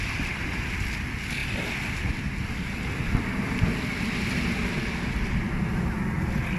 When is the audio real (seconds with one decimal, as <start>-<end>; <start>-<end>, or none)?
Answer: 0.0-6.6